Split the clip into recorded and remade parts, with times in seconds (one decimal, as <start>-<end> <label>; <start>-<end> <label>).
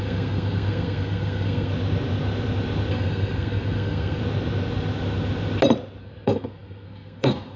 0.0-1.7 remade; 1.7-2.9 recorded; 2.9-4.2 remade; 4.2-6.0 recorded; 6.0-7.6 remade